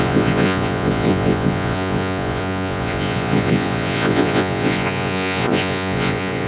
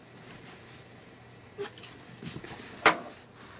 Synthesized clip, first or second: first